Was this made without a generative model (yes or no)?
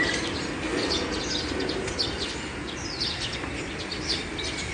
yes